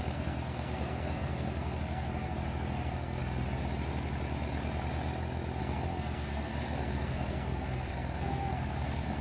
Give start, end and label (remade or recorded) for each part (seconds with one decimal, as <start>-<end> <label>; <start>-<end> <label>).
0.0-3.2 remade; 3.2-5.6 recorded; 5.6-9.2 remade